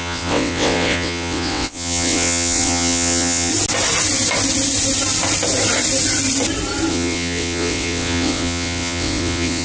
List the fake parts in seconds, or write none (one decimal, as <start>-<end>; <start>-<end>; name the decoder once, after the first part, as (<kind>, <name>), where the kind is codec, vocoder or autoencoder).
0.0-3.5 (vocoder, WaveNeXt); 6.9-9.6